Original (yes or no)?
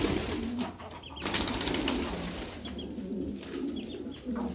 yes